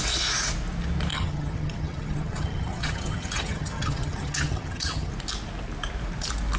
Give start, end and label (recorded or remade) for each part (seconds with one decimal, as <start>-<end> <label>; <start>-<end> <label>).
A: 0.0-1.1 recorded; 1.1-5.1 remade; 5.1-6.6 recorded